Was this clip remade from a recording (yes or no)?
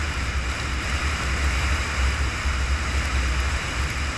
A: no